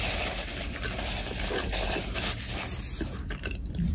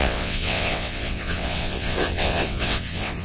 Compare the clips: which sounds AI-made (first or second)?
second